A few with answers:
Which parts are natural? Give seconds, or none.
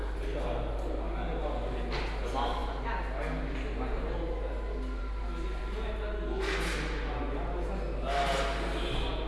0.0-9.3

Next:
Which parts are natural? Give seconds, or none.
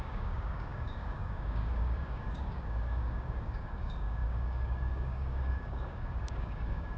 none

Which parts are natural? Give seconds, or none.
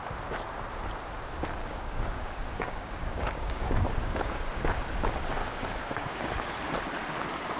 0.0-1.6; 4.8-5.4; 6.6-7.6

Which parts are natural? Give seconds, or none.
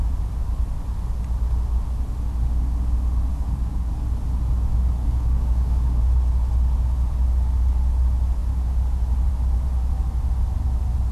0.0-3.3; 3.9-5.0; 6.0-11.1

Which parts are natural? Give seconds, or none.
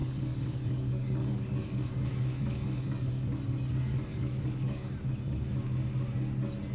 3.1-4.1; 4.9-6.7